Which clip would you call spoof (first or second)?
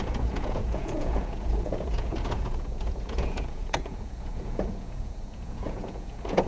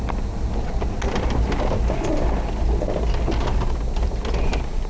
first